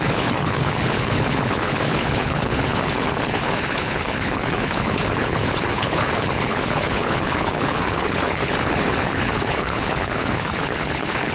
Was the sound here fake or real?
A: fake